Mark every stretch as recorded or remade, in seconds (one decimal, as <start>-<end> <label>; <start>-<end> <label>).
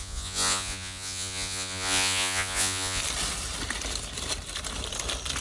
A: 0.0-3.0 remade; 3.0-5.4 recorded